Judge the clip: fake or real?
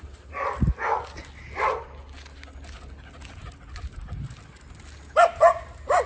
real